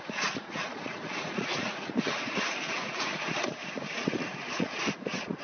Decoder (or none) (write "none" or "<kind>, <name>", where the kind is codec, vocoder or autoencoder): vocoder, Vocos